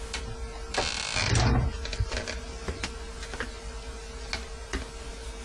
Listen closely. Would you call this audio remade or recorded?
recorded